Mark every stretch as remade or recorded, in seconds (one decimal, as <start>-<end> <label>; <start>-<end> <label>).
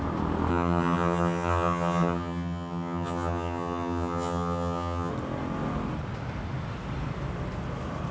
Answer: 0.0-0.5 recorded; 0.5-5.1 remade; 5.1-8.1 recorded